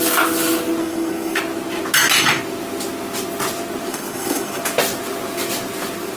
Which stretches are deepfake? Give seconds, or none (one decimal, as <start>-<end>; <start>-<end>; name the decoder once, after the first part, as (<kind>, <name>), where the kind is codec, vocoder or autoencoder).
0.8-1.4 (codec, SNAC); 3.9-4.6